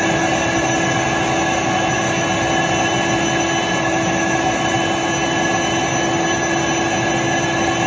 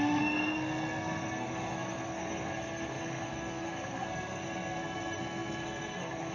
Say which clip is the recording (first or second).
first